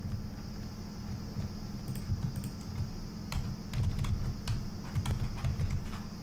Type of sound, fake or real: real